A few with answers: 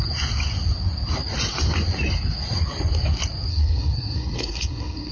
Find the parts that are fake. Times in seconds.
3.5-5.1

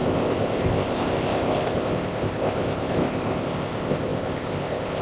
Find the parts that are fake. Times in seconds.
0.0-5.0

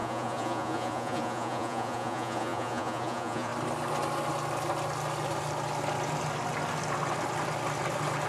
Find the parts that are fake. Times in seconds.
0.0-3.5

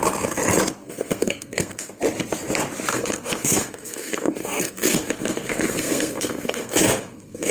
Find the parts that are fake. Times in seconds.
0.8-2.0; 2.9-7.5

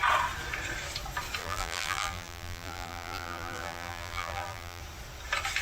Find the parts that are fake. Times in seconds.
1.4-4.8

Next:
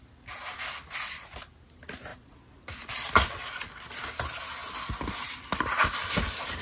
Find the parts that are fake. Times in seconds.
none